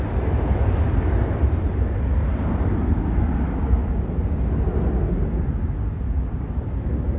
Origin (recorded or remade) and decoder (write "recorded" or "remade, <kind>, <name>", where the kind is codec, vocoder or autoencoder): recorded